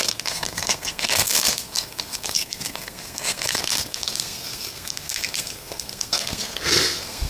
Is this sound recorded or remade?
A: remade